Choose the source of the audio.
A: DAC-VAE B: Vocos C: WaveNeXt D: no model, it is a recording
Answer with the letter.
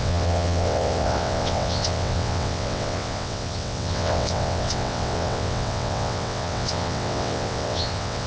C